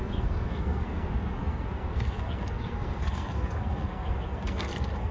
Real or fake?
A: fake